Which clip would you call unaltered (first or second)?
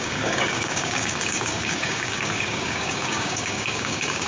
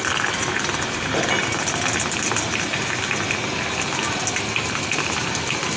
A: second